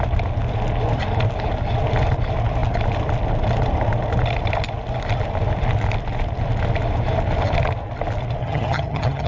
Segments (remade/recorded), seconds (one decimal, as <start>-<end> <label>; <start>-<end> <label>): 0.0-8.4 recorded; 8.4-9.3 remade